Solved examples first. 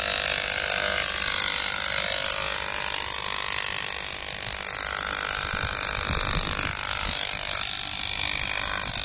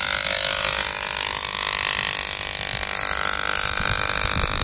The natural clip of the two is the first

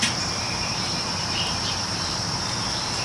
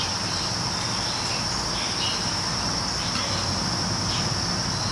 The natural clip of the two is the second